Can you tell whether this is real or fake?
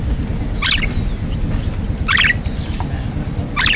real